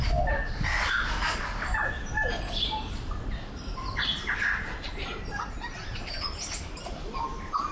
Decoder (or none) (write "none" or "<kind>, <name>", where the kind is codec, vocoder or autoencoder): none